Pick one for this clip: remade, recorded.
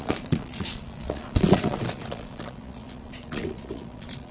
remade